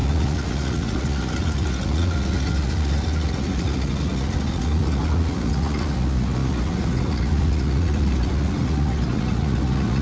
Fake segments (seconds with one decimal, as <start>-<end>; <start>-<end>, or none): 0.0-10.0